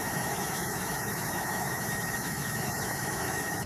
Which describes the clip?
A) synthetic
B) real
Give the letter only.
A